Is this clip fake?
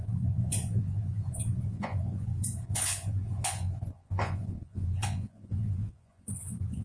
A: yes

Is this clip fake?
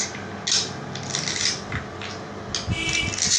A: no